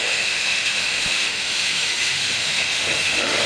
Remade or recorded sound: remade